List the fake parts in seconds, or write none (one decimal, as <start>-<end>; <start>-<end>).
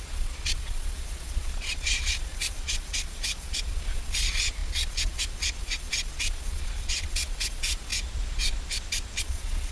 0.0-7.9; 9.2-9.7